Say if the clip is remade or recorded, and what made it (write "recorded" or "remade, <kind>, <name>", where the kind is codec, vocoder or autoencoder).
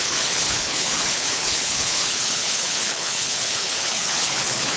remade, codec, HILCodec